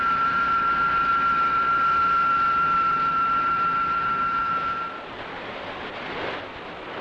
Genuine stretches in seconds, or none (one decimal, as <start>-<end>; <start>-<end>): 0.0-7.0